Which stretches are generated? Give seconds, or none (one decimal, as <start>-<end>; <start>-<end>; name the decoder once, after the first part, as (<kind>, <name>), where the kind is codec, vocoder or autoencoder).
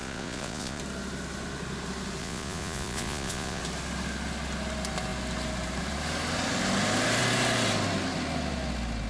0.0-0.8 (vocoder, Vocos); 2.2-3.6